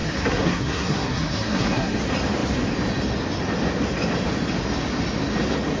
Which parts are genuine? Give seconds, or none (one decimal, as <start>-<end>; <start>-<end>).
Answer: 2.0-5.8